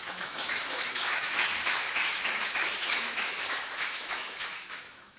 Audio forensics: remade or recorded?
remade